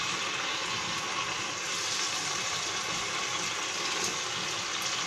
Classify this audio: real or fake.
real